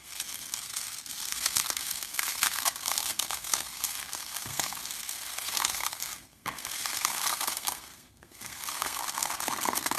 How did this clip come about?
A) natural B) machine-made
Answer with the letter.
B